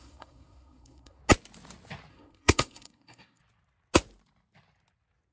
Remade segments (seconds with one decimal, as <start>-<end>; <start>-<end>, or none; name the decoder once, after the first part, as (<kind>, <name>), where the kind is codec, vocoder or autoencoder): 0.0-1.2 (codec, SNAC); 2.1-3.4

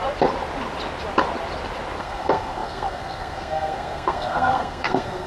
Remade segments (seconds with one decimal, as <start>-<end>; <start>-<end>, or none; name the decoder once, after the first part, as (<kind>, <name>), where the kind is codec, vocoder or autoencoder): 2.0-5.3 (codec, SNAC)